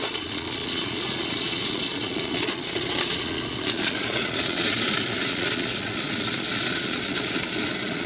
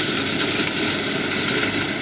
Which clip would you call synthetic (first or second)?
first